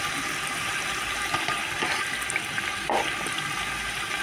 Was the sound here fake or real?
real